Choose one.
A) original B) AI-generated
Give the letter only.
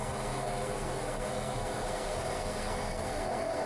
B